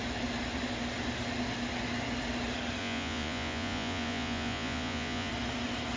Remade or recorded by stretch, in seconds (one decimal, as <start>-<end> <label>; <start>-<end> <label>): 0.0-2.8 recorded; 2.8-5.3 remade; 5.3-6.0 recorded